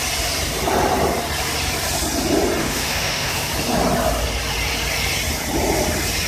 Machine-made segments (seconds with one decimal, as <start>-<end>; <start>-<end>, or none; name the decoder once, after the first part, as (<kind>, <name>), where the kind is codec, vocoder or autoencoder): 2.6-3.5 (autoencoder, DAC-VAE)